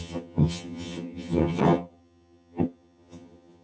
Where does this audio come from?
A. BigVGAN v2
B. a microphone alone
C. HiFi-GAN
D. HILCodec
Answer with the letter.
C